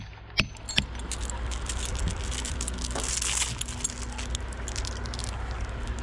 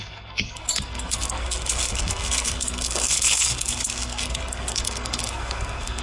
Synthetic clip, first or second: second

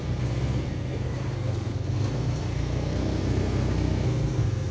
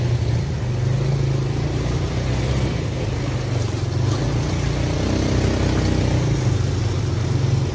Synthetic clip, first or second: first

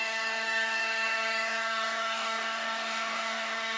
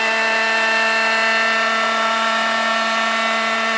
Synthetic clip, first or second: first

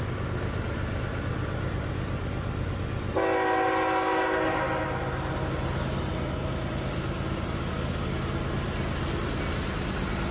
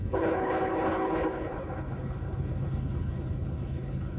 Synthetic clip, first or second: second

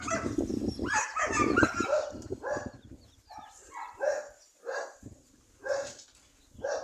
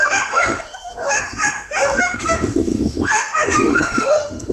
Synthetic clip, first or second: second